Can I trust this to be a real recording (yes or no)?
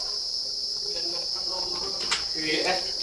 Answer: yes